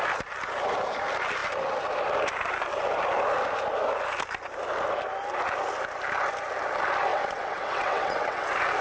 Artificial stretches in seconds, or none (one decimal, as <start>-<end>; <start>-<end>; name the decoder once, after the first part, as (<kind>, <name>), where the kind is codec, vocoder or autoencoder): 7.1-8.4 (vocoder, WaveNeXt)